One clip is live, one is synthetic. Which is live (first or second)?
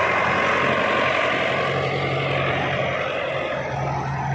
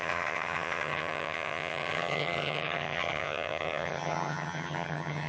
first